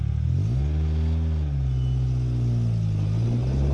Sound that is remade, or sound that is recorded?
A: recorded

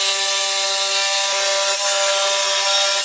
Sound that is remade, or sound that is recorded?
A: recorded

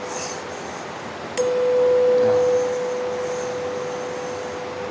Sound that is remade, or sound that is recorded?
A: recorded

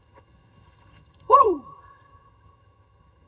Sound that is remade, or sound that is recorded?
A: remade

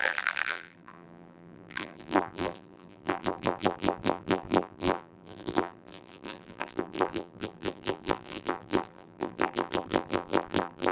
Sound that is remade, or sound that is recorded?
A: remade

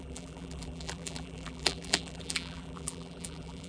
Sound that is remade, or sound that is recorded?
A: remade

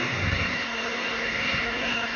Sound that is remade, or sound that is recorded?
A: remade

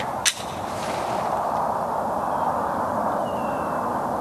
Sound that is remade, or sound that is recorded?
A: recorded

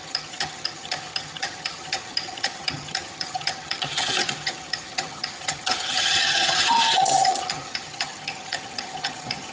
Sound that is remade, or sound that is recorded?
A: remade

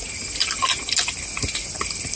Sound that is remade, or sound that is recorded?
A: recorded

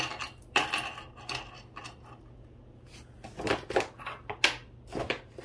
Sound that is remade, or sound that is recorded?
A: recorded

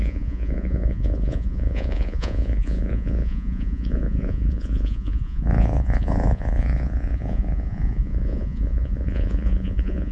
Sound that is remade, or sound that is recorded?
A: remade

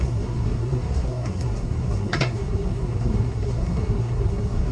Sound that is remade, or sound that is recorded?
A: remade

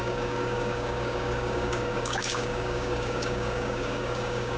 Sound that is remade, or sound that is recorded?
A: remade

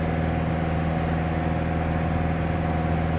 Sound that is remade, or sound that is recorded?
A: recorded